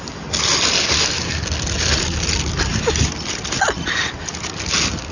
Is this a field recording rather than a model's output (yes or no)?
yes